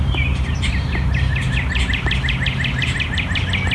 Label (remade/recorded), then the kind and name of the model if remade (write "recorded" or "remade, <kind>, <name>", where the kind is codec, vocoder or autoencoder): recorded